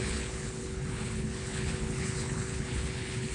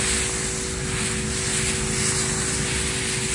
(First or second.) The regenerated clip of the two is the first